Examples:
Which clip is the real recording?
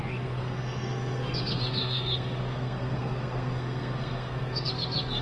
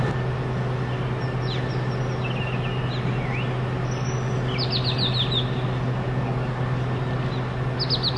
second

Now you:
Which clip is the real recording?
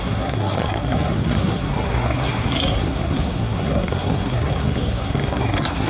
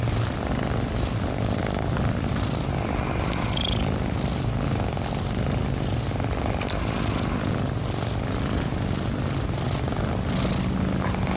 second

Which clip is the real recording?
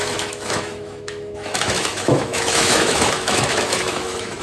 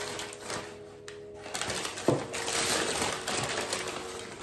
second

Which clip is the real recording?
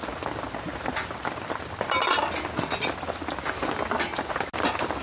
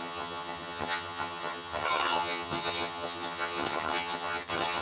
first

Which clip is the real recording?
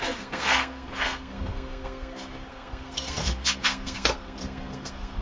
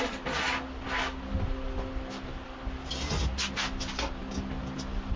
second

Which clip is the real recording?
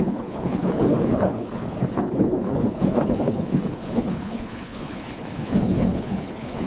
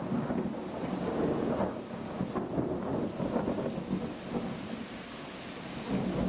second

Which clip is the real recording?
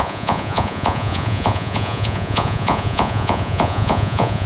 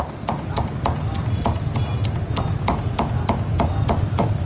second